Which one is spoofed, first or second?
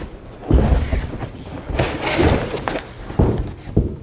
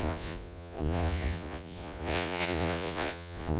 second